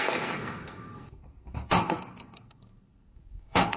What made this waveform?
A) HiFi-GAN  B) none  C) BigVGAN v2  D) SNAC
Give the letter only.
D